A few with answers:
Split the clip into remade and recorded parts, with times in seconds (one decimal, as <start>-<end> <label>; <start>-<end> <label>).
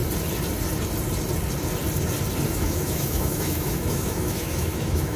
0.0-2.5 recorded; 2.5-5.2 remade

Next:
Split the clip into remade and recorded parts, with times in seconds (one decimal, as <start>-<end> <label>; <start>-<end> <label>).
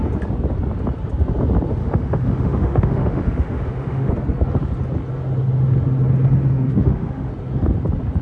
0.0-1.8 recorded; 1.8-4.1 remade; 4.1-6.5 recorded; 6.5-7.3 remade; 7.3-8.2 recorded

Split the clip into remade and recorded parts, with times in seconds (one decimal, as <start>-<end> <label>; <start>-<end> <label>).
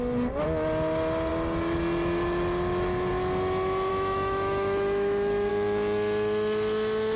0.0-3.9 recorded; 3.9-5.5 remade; 5.5-7.2 recorded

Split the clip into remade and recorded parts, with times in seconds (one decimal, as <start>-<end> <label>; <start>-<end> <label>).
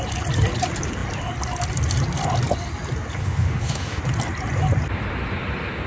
0.0-3.2 recorded; 3.2-4.0 remade; 4.0-5.9 recorded